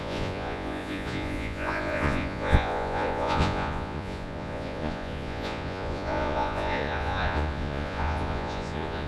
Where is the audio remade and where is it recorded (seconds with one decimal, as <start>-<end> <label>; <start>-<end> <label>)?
0.0-9.1 remade